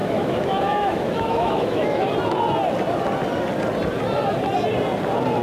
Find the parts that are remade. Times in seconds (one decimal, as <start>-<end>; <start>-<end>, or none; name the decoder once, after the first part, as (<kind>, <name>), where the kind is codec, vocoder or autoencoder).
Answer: 0.0-2.1 (autoencoder, DAC-VAE)